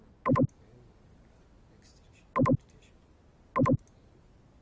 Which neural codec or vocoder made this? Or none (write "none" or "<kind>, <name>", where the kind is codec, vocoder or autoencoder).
none